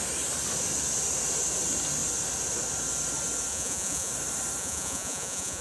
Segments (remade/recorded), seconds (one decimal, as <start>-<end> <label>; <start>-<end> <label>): 0.0-3.5 recorded; 3.5-4.1 remade; 4.1-4.6 recorded; 4.6-5.6 remade